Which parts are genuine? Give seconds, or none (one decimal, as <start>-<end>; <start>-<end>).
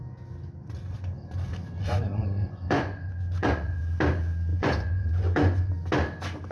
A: 0.0-1.8; 3.8-4.5; 5.7-6.5